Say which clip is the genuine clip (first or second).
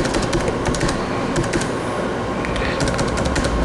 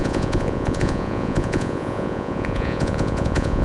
first